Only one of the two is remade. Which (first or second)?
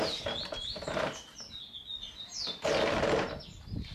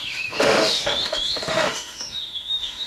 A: second